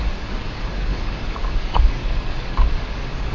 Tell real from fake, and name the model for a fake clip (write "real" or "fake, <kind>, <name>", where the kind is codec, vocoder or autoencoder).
fake, codec, DAC